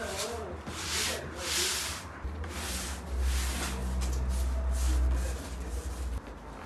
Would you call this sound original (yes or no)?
yes